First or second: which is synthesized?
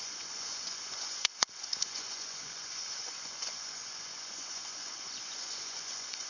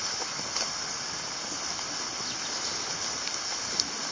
first